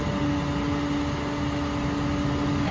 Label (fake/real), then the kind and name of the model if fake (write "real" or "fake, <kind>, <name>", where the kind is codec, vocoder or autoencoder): real